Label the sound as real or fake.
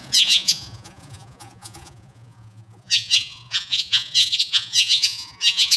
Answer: fake